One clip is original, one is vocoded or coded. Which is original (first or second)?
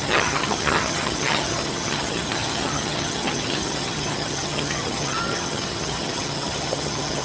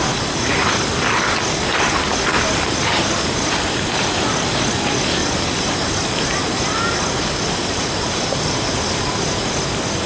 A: second